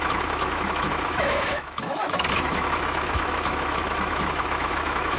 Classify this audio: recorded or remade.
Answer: remade